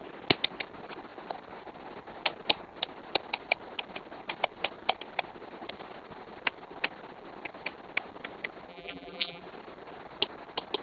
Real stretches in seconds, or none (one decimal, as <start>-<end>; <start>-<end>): 0.0-8.7; 9.4-10.8